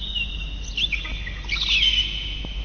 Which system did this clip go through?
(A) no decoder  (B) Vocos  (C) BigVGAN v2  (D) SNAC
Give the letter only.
A